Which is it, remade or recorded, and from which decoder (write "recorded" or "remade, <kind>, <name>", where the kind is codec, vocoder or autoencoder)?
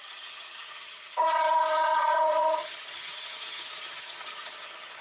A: remade, vocoder, HiFi-GAN